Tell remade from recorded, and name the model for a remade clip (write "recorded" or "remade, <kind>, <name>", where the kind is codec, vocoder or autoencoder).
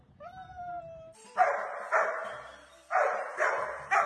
remade, vocoder, BigVGAN v2